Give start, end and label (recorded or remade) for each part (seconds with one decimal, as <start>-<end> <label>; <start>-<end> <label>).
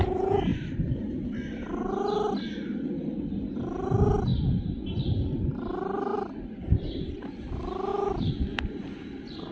0.0-0.5 recorded; 0.5-1.0 remade; 1.0-7.9 recorded; 7.9-9.5 remade